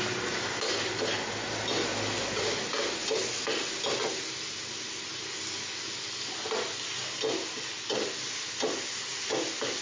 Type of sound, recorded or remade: recorded